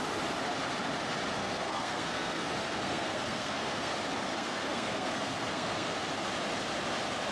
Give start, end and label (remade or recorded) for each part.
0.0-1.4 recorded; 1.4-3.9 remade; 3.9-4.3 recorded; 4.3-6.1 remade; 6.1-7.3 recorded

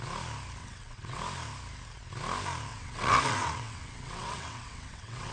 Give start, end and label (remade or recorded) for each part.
0.0-0.6 recorded; 0.6-1.2 remade; 1.2-2.7 recorded; 2.7-5.3 remade